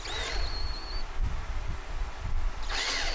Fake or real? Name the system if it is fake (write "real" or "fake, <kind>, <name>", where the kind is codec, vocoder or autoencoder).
real